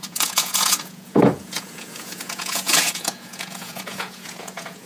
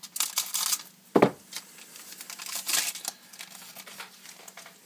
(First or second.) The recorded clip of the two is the second